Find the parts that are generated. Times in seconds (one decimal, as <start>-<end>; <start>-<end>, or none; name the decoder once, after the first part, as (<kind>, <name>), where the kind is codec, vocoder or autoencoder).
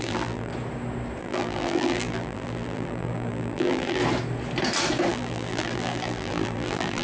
0.0-0.5 (vocoder, BigVGAN v2); 1.2-4.0; 5.1-7.0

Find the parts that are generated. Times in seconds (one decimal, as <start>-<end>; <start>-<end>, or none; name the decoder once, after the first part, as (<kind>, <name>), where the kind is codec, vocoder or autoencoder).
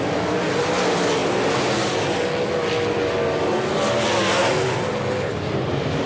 none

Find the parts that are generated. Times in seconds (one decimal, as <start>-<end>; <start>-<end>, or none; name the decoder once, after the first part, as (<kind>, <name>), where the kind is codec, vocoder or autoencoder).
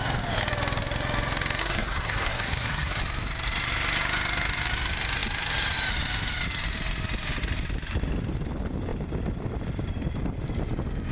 1.6-3.0 (codec, SNAC)